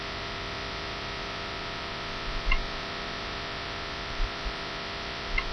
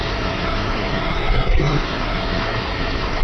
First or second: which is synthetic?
second